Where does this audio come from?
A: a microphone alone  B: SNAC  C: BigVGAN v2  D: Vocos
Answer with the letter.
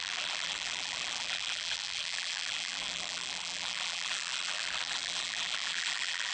C